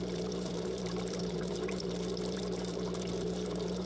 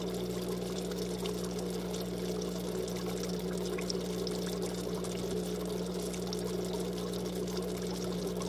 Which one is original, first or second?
second